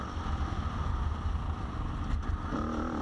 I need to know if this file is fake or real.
real